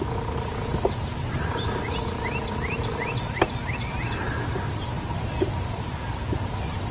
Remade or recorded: recorded